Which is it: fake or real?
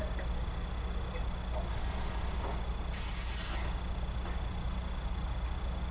real